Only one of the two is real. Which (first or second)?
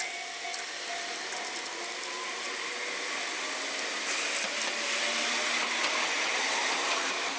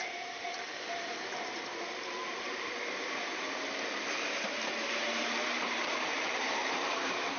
first